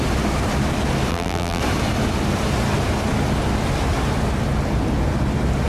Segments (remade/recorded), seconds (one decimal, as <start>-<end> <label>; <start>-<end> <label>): 0.0-1.1 recorded; 1.1-1.6 remade; 1.6-5.7 recorded